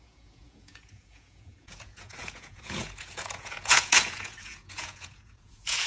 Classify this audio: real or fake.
fake